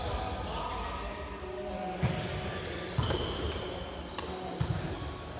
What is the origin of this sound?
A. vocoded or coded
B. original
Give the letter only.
B